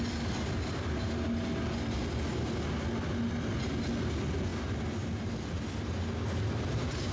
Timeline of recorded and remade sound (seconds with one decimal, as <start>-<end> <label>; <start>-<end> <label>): 0.0-7.1 recorded